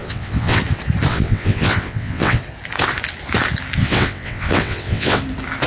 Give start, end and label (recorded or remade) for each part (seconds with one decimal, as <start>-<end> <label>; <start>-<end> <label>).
0.0-0.6 remade; 0.6-1.1 recorded; 1.1-2.4 remade; 2.4-3.8 recorded; 3.8-5.2 remade; 5.2-5.7 recorded